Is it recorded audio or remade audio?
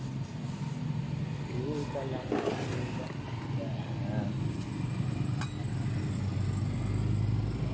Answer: recorded